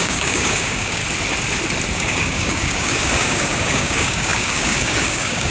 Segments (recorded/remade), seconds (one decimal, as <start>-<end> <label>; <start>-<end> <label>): 0.0-1.0 remade; 1.0-1.9 recorded; 1.9-5.5 remade